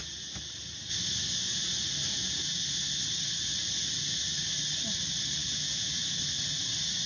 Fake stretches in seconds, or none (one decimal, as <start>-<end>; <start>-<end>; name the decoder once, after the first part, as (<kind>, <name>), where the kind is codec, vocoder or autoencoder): 2.1-2.6 (vocoder, Vocos); 5.4-6.2